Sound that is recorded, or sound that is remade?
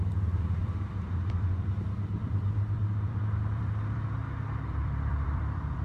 remade